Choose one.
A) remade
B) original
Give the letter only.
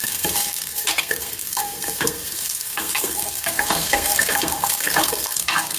A